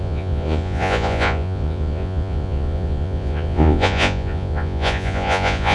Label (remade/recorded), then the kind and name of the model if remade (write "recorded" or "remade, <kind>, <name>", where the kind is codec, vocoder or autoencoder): remade, vocoder, Vocos